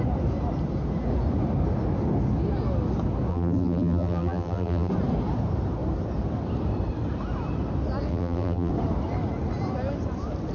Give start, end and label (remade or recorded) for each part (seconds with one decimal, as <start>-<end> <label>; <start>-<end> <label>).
0.0-3.3 recorded; 3.3-4.9 remade; 4.9-8.1 recorded; 8.1-8.7 remade; 8.7-10.5 recorded